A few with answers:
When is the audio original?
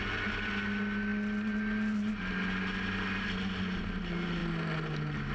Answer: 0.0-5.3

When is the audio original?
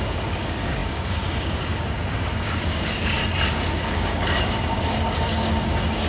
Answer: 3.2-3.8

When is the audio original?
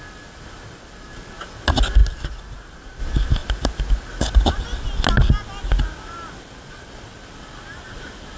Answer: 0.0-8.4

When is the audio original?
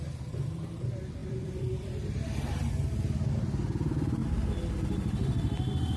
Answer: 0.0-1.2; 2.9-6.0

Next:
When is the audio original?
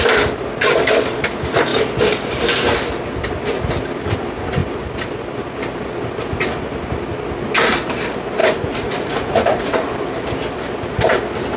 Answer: 0.0-8.4; 9.9-11.6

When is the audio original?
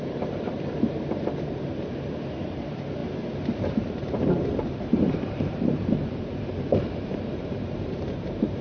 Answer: 3.0-3.6